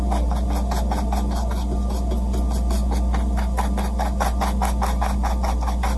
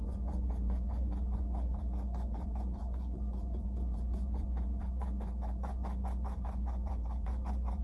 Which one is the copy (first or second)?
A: second